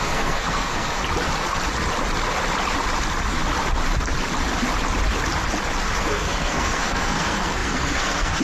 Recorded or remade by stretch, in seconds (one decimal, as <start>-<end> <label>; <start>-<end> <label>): 0.0-1.0 remade; 1.0-6.0 recorded; 6.0-8.4 remade